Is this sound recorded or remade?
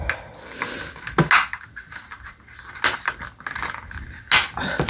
recorded